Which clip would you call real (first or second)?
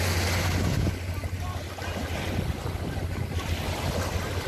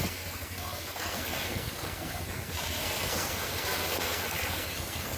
first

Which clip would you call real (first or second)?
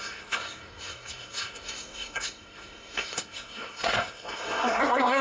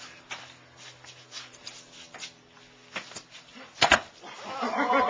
second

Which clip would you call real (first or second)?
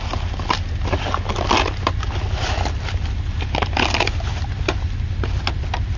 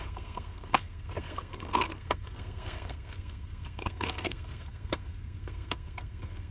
first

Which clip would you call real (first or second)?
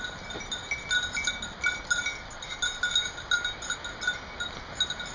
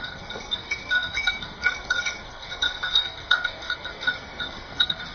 first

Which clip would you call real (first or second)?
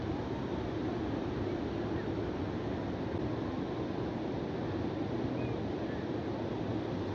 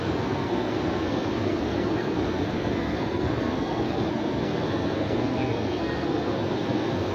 first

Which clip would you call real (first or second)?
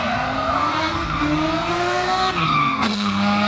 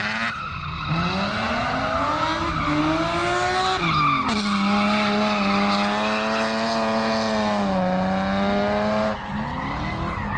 second